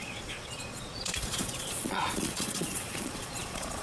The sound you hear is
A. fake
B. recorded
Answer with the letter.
A